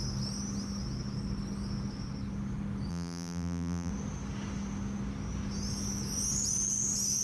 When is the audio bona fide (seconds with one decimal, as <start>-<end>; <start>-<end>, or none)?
0.0-2.9; 3.9-7.2